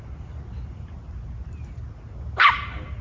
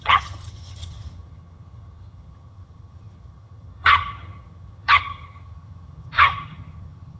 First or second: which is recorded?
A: first